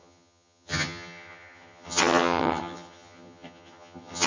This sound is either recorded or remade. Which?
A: remade